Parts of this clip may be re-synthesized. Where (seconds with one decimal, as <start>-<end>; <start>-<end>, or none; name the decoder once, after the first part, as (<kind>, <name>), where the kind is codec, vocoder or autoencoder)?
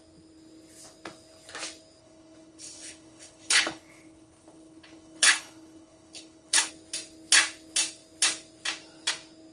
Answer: 2.0-6.7 (codec, HILCodec)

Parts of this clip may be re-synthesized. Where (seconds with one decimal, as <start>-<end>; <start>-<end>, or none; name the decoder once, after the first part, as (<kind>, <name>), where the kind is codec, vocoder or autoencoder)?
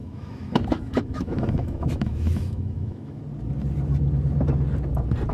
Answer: 0.0-3.2 (autoencoder, DAC-VAE)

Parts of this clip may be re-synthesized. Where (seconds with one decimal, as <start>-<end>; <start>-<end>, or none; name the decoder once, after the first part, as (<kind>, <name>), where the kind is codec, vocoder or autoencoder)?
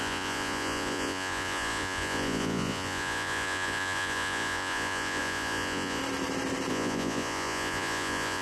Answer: 0.0-6.0 (vocoder, Vocos); 6.7-8.4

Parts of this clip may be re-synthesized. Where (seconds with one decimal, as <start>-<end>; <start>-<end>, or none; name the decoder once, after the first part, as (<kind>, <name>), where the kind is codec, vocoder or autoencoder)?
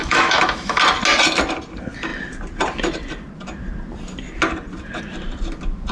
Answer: 0.0-0.8 (autoencoder, DAC-VAE)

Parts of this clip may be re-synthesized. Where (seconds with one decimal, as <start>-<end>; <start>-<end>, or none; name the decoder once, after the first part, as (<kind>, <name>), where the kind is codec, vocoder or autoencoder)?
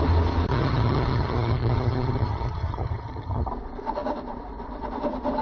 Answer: 0.5-3.5 (vocoder, HiFi-GAN)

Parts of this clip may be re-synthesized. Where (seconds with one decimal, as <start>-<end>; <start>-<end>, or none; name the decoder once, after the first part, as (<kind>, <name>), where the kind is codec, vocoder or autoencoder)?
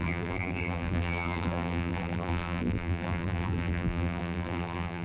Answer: 0.0-5.0 (vocoder, BigVGAN v2)